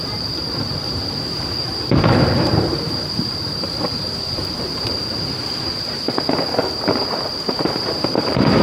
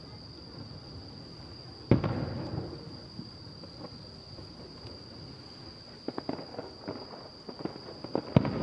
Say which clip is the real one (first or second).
second